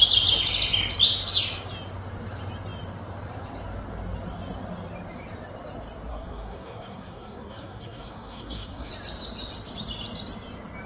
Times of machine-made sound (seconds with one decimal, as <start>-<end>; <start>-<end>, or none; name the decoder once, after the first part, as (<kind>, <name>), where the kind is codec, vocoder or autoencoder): 6.1-8.9 (codec, SNAC)